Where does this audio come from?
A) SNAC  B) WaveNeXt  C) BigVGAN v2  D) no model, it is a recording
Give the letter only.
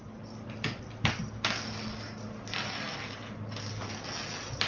D